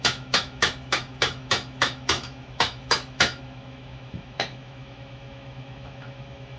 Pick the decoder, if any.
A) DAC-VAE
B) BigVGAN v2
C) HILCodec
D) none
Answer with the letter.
A